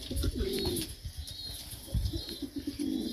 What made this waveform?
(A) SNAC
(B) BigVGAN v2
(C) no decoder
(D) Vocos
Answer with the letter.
B